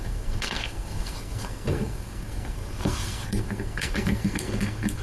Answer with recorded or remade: remade